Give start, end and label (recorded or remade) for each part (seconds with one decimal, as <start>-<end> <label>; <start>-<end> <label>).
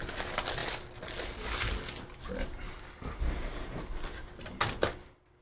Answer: 0.0-5.4 recorded